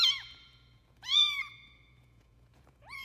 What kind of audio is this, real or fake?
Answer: fake